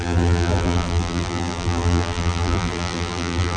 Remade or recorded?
remade